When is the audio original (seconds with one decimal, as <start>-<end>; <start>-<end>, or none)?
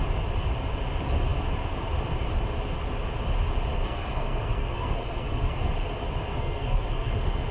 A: 0.0-3.7; 5.7-6.3